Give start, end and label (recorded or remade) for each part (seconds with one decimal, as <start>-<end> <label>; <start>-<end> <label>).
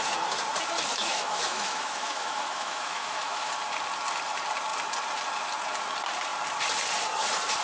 0.0-0.9 recorded; 0.9-3.5 remade; 3.5-7.6 recorded